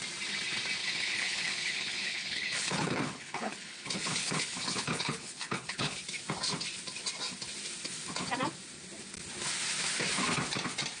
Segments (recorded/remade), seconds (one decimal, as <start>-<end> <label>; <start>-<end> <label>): 0.0-0.8 recorded; 0.8-6.0 remade; 6.0-11.0 recorded